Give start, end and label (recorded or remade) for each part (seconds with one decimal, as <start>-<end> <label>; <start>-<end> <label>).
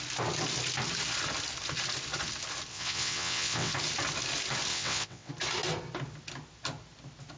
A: 0.0-2.7 recorded; 2.7-3.7 remade; 3.7-4.7 recorded; 4.7-5.3 remade; 5.3-7.4 recorded